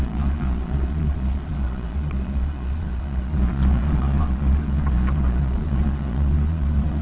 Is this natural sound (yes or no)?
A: no